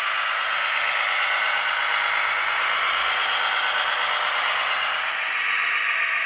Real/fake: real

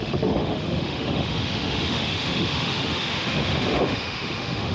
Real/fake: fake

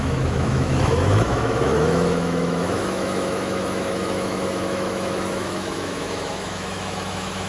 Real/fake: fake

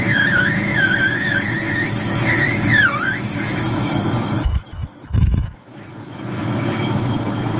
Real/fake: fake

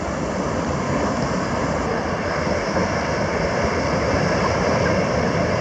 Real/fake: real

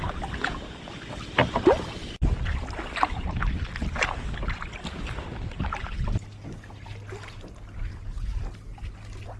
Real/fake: real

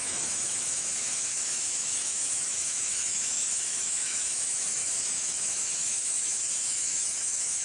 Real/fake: fake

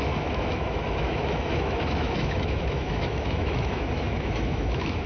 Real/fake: fake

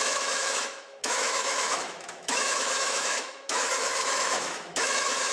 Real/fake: fake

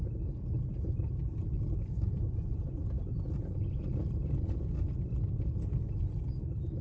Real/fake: real